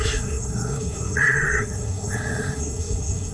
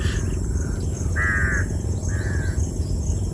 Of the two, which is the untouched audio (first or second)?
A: second